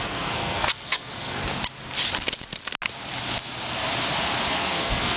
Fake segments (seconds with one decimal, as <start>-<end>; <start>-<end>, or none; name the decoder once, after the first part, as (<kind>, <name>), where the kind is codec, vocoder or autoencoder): 0.0-1.4 (codec, SNAC); 4.5-5.2